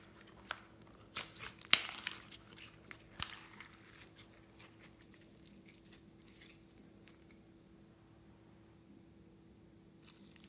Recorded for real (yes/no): yes